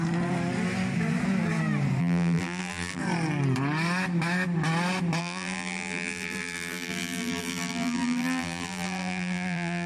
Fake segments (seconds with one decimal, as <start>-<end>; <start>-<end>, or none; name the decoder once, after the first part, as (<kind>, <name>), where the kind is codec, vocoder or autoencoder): 2.0-3.0 (vocoder, BigVGAN v2); 5.2-9.9